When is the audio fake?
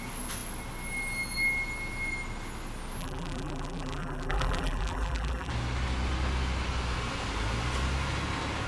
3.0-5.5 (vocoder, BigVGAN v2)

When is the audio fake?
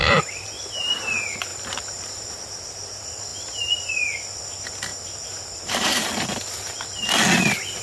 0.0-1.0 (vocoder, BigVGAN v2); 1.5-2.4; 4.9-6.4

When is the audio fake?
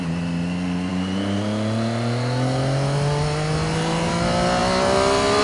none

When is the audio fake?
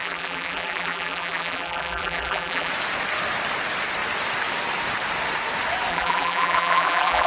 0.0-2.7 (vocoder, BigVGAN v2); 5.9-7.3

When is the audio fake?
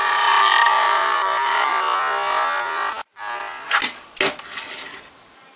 0.0-1.7 (vocoder, BigVGAN v2); 5.1-5.6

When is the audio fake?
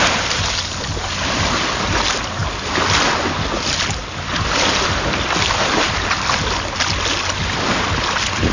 none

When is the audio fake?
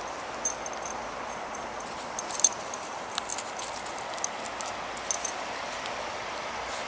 0.0-3.3 (vocoder, BigVGAN v2); 5.2-6.9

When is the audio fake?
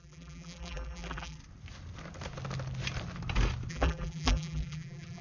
0.0-1.4 (vocoder, BigVGAN v2); 3.7-5.2